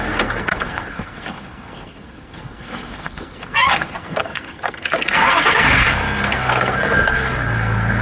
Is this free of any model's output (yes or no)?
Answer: no